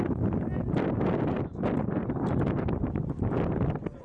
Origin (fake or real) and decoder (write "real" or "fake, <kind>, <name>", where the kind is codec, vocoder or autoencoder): real